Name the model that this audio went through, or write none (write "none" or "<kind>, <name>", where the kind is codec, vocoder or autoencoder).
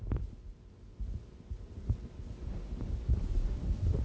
none